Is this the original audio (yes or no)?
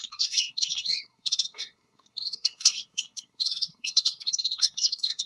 no